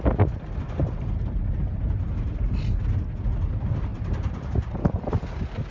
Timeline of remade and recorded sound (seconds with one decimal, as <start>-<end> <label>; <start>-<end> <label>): 0.0-5.7 recorded